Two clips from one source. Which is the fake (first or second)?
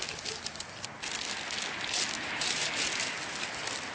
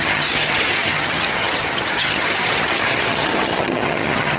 second